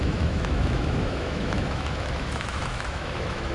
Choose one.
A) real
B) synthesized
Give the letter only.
B